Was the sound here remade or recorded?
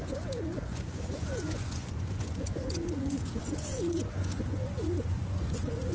remade